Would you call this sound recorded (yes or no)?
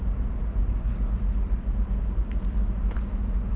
yes